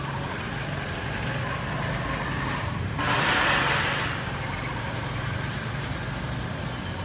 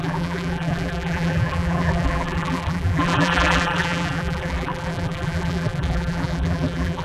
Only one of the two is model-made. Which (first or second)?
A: second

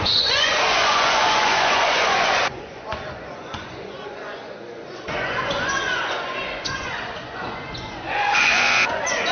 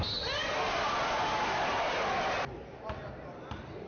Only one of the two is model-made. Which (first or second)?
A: first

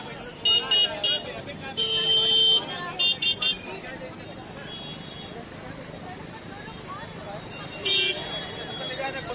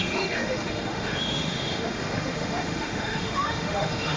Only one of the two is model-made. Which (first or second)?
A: second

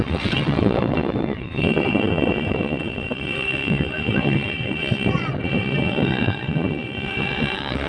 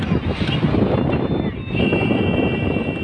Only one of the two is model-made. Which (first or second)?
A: first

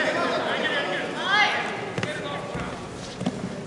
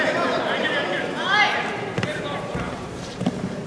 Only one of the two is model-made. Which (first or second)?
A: second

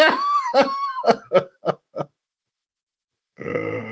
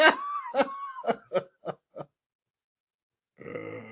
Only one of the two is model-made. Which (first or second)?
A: first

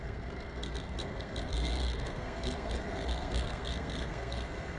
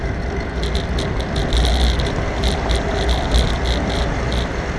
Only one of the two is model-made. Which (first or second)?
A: first